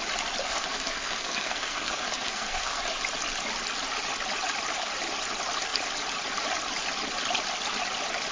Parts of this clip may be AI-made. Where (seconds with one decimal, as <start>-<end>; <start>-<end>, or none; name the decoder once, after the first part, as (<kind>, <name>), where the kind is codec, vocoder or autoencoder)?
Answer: 0.4-2.8 (codec, SNAC)